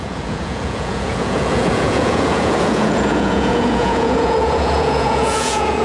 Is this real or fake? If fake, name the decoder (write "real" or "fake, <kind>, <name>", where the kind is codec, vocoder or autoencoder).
fake, vocoder, Vocos